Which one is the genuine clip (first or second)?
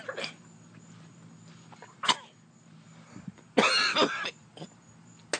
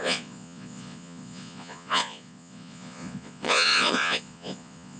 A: first